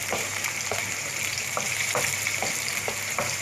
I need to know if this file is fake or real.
fake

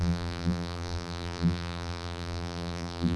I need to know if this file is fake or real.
fake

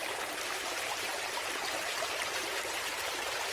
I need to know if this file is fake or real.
fake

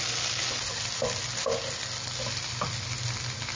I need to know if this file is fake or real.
real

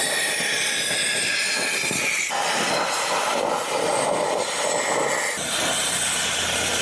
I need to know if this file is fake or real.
real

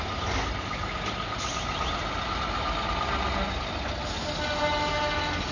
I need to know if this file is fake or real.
real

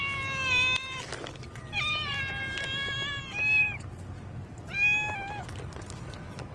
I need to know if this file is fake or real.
real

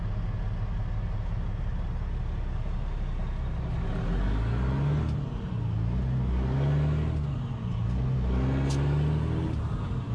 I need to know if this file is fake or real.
real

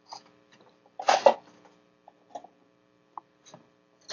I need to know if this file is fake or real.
real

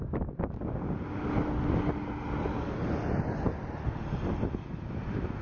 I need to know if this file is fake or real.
real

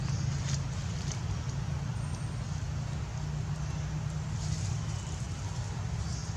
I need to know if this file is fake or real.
real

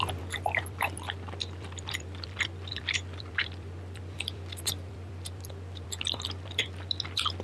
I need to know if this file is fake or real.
fake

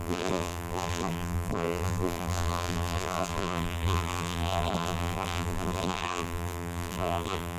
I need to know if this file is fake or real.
fake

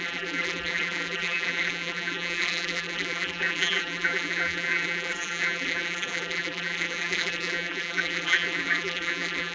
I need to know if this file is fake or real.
fake